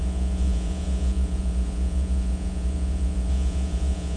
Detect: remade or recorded remade